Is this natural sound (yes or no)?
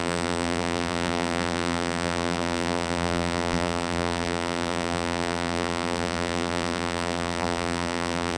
no